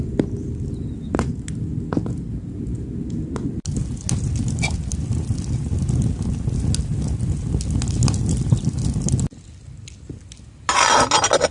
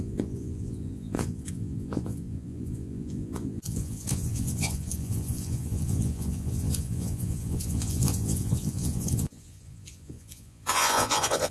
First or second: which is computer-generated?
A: second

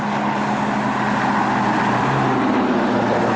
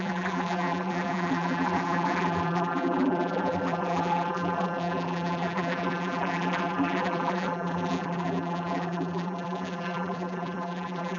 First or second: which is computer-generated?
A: second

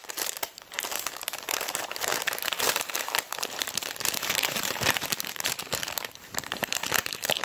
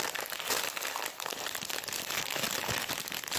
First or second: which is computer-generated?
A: first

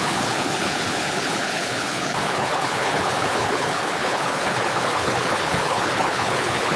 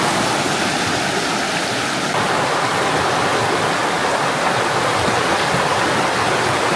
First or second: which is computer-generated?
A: first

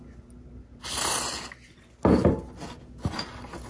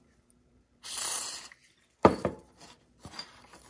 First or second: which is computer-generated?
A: second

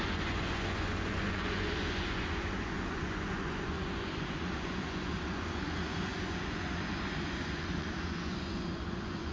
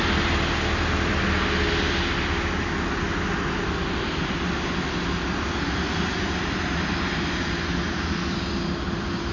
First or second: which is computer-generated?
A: first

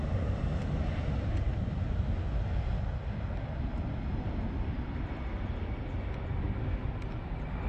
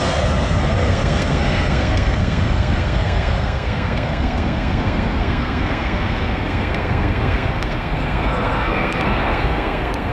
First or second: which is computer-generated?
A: second